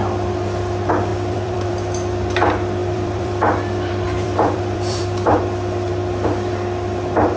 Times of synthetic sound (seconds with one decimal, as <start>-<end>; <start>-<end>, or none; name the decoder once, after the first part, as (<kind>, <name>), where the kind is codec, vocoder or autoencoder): 1.1-1.7 (vocoder, BigVGAN v2); 2.8-5.4